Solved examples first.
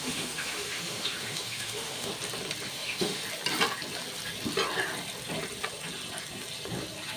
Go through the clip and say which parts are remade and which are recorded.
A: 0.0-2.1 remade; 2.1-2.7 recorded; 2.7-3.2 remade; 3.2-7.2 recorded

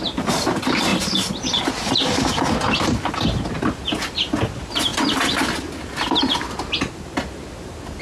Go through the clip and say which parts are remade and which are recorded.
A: 0.0-8.0 recorded

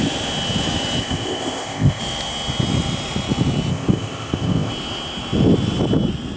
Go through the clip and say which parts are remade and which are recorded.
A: 0.0-1.0 recorded; 1.0-2.0 remade; 2.0-3.7 recorded; 3.7-4.7 remade; 4.7-6.4 recorded

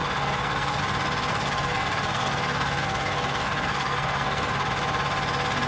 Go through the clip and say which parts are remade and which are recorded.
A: 0.0-0.8 remade; 0.8-1.3 recorded; 1.3-4.7 remade; 4.7-5.7 recorded